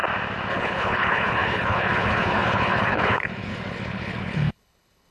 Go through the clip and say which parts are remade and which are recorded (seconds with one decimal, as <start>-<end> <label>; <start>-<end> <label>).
0.0-0.5 recorded; 0.5-5.1 remade